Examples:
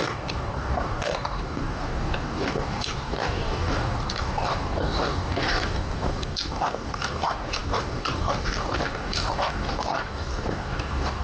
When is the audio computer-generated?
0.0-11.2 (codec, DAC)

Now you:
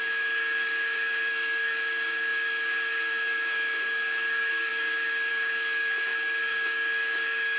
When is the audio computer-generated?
0.0-7.6 (codec, DAC)

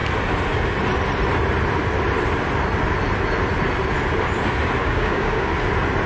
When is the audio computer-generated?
4.8-5.5 (codec, DAC)

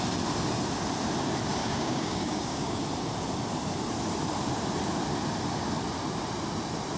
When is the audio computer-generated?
1.6-2.8 (codec, DAC)

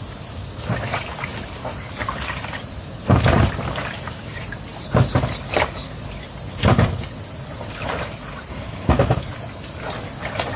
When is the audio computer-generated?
8.5-9.0 (codec, DAC)

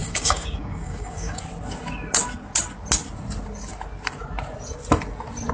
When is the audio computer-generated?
0.0-1.4 (codec, DAC)